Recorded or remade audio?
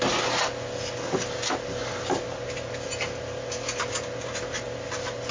recorded